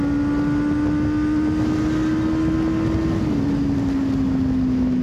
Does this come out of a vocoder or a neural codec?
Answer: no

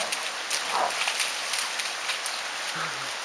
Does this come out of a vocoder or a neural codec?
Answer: no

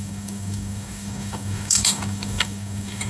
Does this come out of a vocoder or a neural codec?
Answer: yes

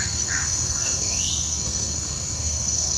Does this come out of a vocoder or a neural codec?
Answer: yes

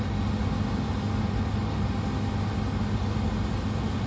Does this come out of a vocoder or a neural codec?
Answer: no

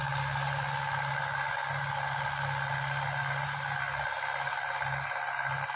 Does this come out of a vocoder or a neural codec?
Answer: no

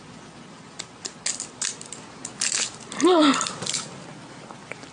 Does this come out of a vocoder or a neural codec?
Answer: no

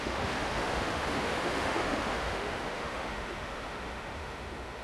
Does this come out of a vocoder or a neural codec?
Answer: yes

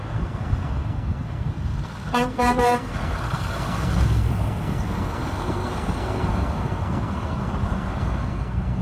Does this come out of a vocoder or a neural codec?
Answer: yes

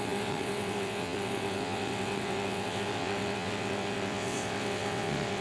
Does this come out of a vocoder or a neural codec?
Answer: yes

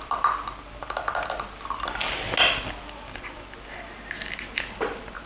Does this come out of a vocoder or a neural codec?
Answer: no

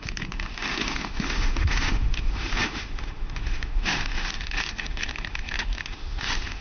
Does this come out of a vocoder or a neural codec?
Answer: yes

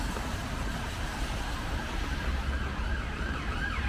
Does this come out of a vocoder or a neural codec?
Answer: no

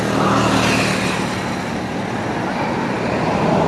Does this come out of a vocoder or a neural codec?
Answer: no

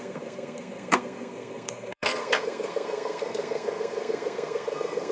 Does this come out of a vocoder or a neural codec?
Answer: yes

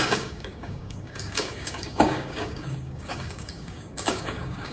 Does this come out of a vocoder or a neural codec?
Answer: yes